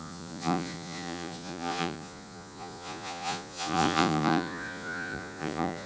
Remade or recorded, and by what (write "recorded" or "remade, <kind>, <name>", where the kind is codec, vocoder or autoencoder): remade, vocoder, Vocos